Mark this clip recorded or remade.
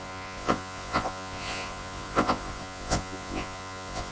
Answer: remade